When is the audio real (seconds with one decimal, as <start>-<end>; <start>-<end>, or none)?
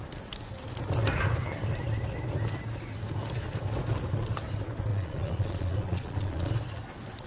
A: 0.0-4.9; 6.5-7.3